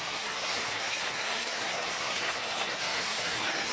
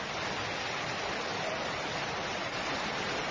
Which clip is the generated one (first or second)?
first